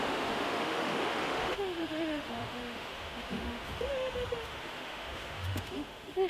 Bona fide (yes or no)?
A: no